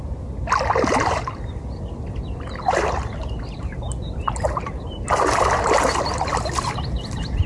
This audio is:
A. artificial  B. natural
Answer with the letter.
B